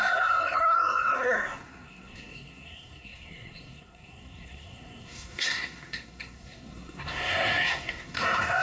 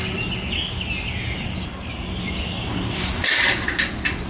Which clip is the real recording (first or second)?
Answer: second